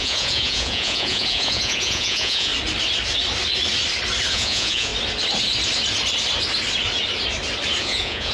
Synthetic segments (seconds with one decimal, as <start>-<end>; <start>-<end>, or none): 0.0-2.5; 4.3-4.9; 7.8-8.3